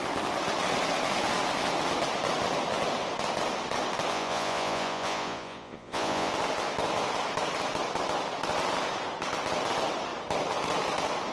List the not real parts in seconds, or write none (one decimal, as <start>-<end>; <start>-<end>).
4.1-6.3